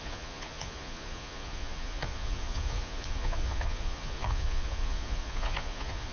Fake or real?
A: fake